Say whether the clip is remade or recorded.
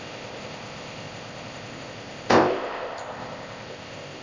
remade